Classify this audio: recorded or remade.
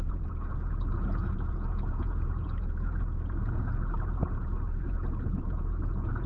remade